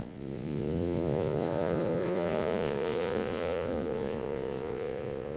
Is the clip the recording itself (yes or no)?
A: no